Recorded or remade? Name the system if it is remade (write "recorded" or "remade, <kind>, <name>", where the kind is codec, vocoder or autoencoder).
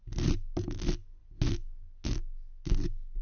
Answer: recorded